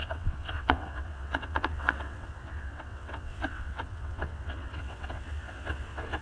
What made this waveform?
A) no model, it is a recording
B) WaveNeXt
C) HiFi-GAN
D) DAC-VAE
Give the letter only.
B